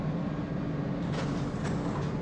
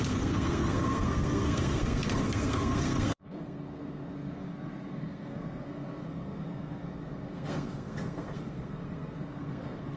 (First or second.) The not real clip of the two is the second